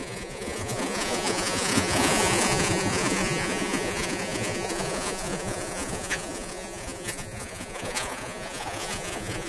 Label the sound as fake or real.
fake